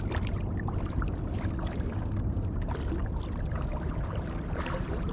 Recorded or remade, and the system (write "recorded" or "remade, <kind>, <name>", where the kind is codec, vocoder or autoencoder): remade, vocoder, BigVGAN v2